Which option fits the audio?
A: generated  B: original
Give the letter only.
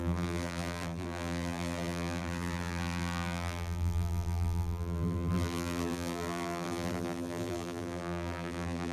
A